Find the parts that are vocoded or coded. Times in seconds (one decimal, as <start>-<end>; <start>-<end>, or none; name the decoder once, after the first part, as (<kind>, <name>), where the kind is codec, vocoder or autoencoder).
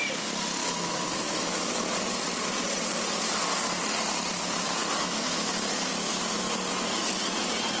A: 0.6-1.7 (autoencoder, DAC-VAE); 4.8-5.5